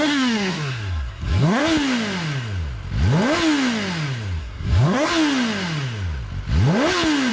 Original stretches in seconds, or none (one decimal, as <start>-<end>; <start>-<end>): 1.6-4.4; 5.1-7.3